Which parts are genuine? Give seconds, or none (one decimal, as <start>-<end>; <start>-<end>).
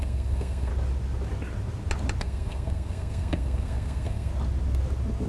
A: 0.7-2.2; 4.3-5.3